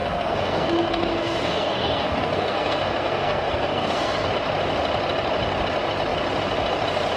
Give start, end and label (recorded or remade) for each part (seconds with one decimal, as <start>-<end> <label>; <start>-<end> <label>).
0.0-4.3 remade; 4.3-7.2 recorded